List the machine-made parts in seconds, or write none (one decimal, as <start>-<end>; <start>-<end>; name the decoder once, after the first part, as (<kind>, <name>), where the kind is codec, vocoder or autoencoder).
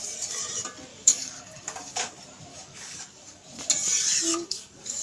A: 0.9-2.1 (codec, DAC); 2.5-3.4; 4.3-5.0